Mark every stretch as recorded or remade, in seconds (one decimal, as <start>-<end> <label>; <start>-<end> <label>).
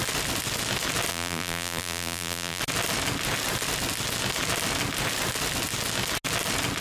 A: 0.0-1.1 recorded; 1.1-2.6 remade; 2.6-6.8 recorded